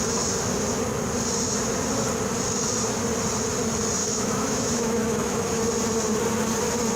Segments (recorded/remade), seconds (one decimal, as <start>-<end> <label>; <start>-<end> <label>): 0.0-4.0 recorded; 4.0-5.7 remade; 5.7-7.0 recorded